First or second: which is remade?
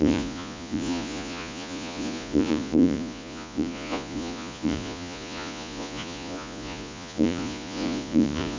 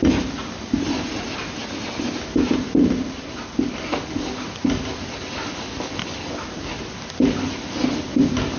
first